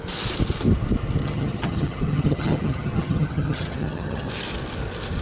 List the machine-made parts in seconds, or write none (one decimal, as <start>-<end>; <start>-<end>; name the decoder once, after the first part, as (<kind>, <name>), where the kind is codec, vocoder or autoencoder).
1.2-4.3 (vocoder, HiFi-GAN)